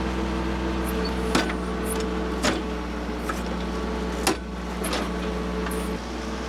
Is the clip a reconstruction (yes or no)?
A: no